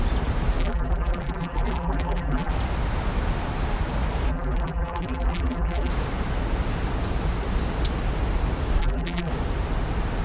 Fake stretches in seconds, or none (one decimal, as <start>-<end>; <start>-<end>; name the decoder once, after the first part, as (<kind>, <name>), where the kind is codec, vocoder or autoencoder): 0.6-2.5 (vocoder, BigVGAN v2); 4.3-5.9; 8.8-9.3